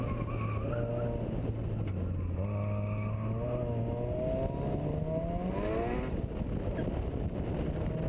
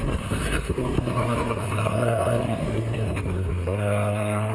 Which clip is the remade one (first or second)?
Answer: second